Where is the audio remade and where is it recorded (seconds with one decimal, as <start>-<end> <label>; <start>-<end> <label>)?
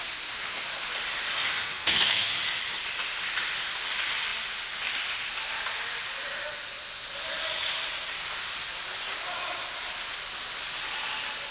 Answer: 0.0-1.4 recorded; 1.4-2.3 remade; 2.3-11.5 recorded